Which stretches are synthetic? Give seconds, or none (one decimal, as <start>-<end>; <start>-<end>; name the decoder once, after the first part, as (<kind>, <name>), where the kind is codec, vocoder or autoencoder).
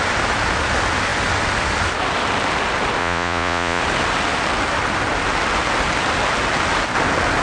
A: 3.0-3.8 (vocoder, Vocos)